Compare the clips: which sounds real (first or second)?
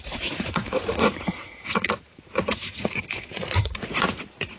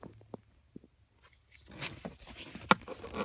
second